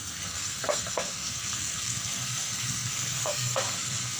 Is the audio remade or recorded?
remade